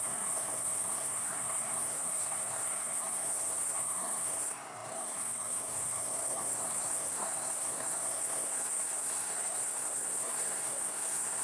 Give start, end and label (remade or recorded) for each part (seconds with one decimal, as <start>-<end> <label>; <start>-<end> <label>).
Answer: 0.0-11.4 remade